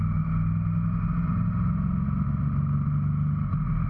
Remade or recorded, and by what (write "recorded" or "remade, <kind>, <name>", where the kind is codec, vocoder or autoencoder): recorded